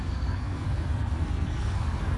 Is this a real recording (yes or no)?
no